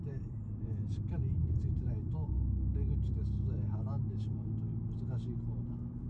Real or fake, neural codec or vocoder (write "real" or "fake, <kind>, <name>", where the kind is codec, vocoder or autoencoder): real